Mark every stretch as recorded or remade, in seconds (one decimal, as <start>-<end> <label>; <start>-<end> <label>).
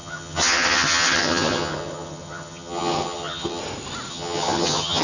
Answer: 0.0-3.6 remade; 3.6-4.1 recorded; 4.1-5.0 remade